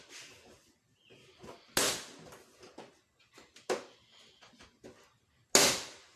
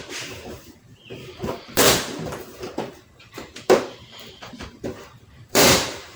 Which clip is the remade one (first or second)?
second